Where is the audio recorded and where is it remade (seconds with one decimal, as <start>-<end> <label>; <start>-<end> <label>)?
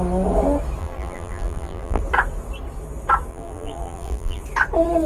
0.0-0.8 recorded; 0.8-2.0 remade; 2.0-3.3 recorded; 3.3-4.4 remade; 4.4-5.1 recorded